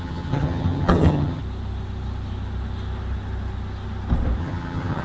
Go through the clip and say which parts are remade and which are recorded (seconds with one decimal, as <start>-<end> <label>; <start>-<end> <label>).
0.0-1.4 remade; 1.4-4.4 recorded; 4.4-5.0 remade